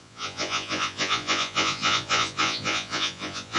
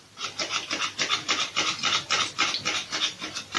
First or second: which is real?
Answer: second